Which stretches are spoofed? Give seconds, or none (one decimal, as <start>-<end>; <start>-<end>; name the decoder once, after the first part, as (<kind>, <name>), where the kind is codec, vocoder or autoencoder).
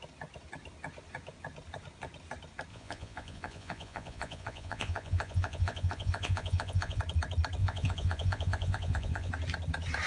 2.7-7.0 (vocoder, Vocos); 7.6-9.3